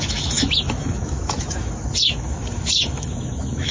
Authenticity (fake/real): fake